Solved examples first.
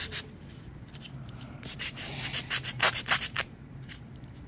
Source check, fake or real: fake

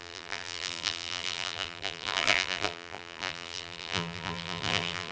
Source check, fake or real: fake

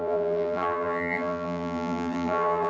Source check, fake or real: fake